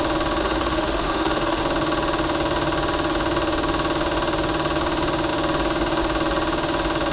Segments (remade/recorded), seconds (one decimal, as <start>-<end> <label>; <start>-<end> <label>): 0.0-0.4 recorded; 0.4-1.6 remade; 1.6-7.1 recorded